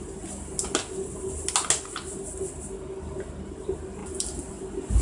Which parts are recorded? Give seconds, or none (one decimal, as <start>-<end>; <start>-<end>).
0.0-5.0